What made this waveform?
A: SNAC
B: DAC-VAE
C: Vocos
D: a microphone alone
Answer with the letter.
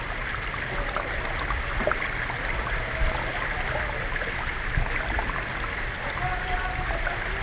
D